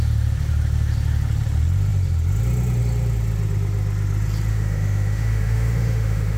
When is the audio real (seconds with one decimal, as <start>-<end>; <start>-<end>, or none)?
0.0-4.5